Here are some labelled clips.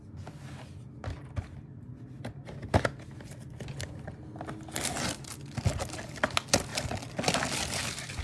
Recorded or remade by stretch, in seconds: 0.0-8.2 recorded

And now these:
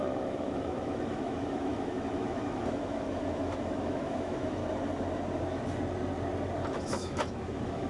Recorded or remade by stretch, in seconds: 0.0-4.6 remade; 4.6-6.7 recorded; 6.7-7.9 remade

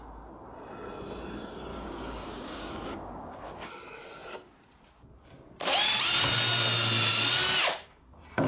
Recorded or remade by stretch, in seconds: 0.0-1.7 recorded; 1.7-3.7 remade; 3.7-8.5 recorded

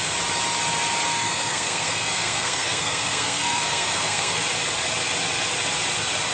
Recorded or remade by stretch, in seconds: 0.0-1.1 recorded; 1.1-4.4 remade; 4.4-6.3 recorded

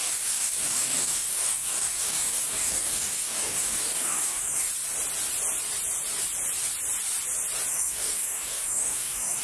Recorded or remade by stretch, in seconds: 0.0-4.7 remade; 4.7-7.7 recorded; 7.7-9.4 remade